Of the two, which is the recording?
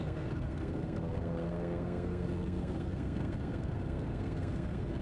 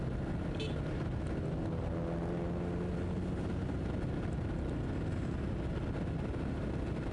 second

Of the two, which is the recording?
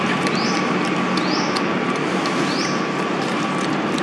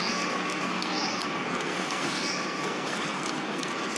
first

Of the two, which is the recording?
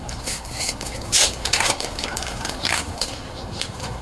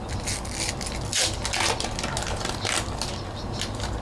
second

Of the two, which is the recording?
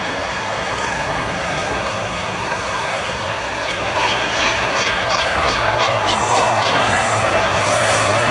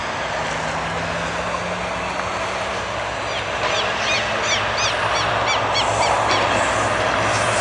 second